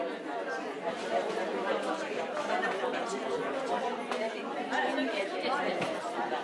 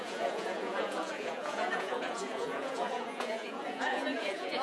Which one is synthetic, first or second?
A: second